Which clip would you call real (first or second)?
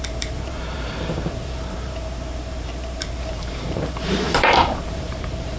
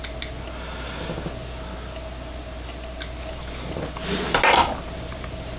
second